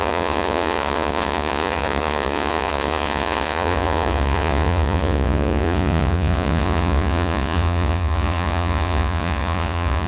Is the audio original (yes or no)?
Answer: no